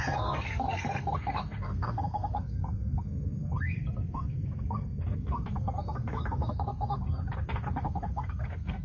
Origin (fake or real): fake